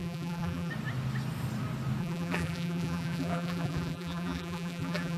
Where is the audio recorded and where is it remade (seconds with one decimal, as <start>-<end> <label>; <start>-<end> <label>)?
0.0-0.7 remade; 0.7-2.0 recorded; 2.0-5.2 remade